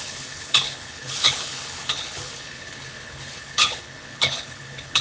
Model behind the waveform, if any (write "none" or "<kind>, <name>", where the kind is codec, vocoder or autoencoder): codec, HILCodec